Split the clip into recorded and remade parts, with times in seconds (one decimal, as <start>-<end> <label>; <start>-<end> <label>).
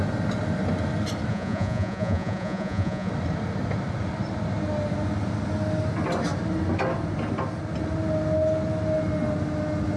0.0-1.3 recorded; 1.3-3.1 remade; 3.1-10.0 recorded